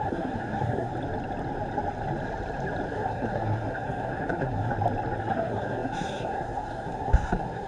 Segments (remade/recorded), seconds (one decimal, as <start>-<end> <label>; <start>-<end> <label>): 0.0-0.9 remade; 0.9-2.9 recorded; 2.9-4.7 remade; 4.7-5.2 recorded; 5.2-7.7 remade